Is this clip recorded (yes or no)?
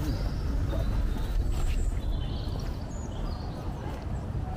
yes